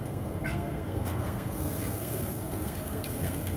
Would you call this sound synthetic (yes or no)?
yes